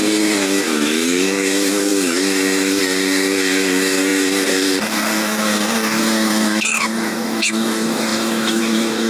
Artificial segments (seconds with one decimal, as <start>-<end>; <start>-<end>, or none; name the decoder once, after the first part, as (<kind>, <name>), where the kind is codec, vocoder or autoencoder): 0.0-9.1 (codec, DAC)